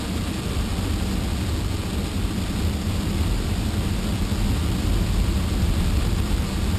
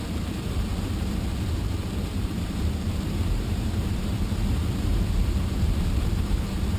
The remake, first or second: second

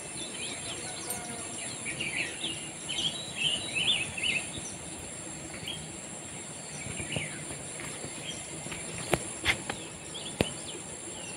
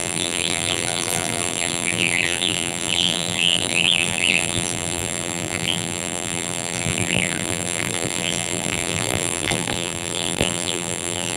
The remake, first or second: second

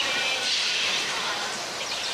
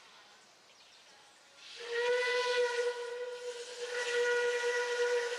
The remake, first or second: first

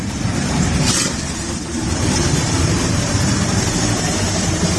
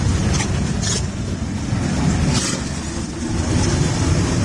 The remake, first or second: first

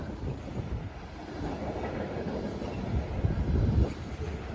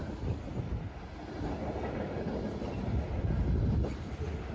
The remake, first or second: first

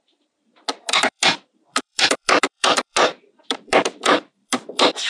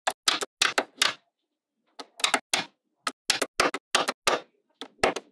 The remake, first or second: first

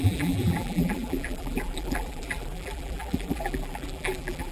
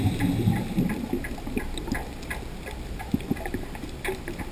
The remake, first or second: first